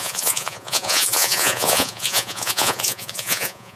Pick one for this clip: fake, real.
fake